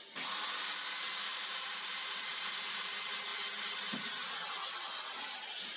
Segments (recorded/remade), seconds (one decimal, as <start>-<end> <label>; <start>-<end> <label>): 0.0-1.3 recorded; 1.3-2.6 remade; 2.6-5.8 recorded